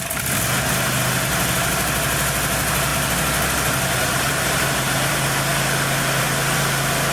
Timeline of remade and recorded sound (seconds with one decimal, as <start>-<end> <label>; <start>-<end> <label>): 0.0-2.9 recorded; 2.9-5.1 remade; 5.1-7.1 recorded